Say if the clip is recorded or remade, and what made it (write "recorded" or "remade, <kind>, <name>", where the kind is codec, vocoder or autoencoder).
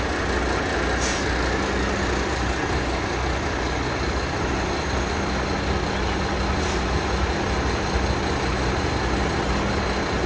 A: recorded